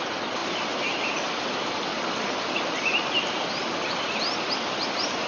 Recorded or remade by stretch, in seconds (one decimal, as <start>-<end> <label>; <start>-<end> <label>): 0.0-5.3 recorded